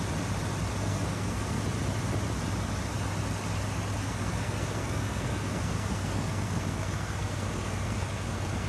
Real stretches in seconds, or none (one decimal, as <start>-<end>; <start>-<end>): 0.0-0.8; 1.6-4.0